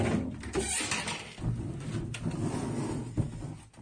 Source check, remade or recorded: recorded